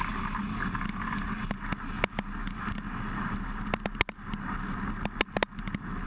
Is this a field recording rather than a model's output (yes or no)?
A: yes